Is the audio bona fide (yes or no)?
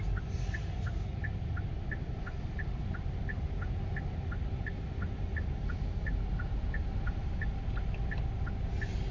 yes